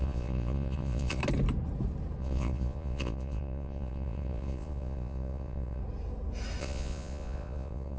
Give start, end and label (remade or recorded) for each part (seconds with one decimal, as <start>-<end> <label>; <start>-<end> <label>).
0.0-1.2 remade; 1.2-2.2 recorded; 2.2-5.8 remade; 5.8-6.6 recorded; 6.6-8.0 remade